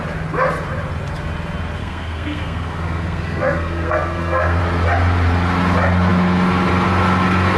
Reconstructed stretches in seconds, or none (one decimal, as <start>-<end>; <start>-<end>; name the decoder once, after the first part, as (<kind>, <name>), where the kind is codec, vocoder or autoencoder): 1.8-4.6 (codec, SNAC)